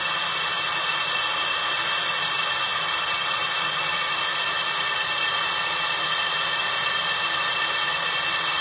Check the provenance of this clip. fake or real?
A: real